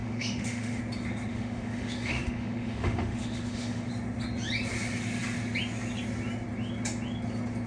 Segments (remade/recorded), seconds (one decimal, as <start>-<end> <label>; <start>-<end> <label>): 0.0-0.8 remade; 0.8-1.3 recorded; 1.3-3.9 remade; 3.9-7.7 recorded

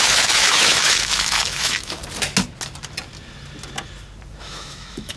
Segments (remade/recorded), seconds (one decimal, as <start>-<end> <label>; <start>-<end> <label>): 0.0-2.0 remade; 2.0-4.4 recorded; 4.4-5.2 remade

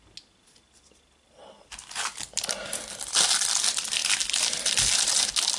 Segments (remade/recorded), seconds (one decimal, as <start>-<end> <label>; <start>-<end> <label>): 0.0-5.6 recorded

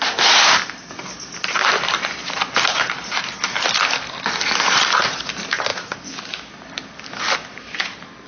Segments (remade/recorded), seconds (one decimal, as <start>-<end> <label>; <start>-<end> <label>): 0.0-5.7 recorded; 5.7-6.5 remade; 6.5-8.3 recorded

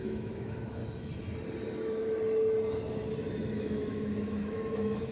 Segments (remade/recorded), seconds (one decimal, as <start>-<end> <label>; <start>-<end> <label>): 0.0-0.8 remade; 0.8-3.4 recorded; 3.4-5.1 remade

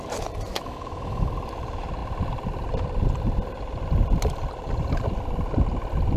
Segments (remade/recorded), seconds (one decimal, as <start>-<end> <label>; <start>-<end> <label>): 0.0-0.5 recorded; 0.5-1.3 remade; 1.3-6.2 recorded

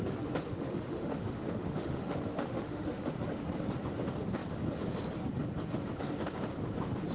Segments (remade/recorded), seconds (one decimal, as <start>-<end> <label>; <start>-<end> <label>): 0.0-0.4 recorded; 0.4-3.1 remade; 3.1-7.1 recorded